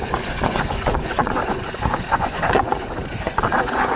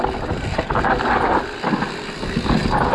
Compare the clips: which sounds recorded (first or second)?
second